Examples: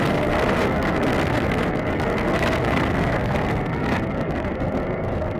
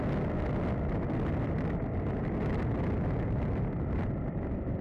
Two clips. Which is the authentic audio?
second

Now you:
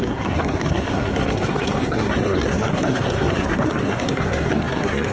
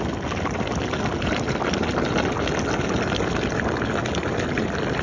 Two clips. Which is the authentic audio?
second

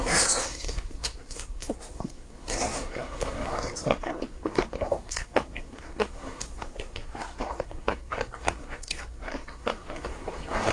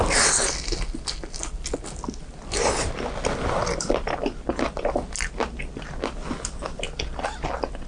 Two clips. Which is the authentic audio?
second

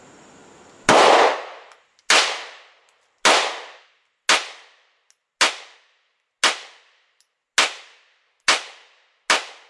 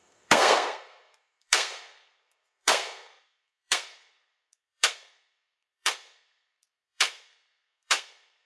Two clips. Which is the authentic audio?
first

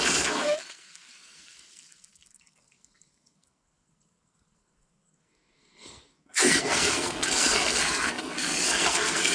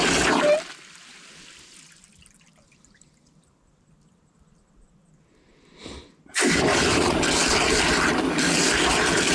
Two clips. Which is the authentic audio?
second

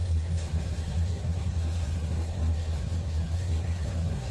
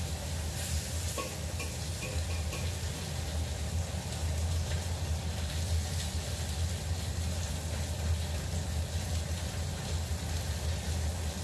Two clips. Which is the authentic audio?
second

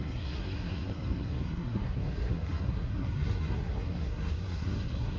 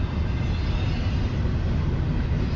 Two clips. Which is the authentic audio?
second